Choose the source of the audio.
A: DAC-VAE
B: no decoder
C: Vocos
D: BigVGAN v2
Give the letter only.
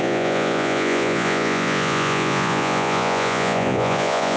C